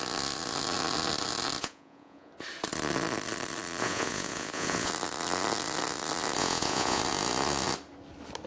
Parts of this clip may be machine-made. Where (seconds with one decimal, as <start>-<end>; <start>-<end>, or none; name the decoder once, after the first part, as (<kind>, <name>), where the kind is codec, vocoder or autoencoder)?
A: 1.6-2.3 (vocoder, Vocos); 3.8-4.9; 6.4-7.0